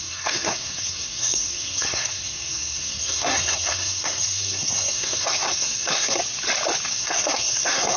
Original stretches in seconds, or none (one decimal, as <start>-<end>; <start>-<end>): 6.2-6.9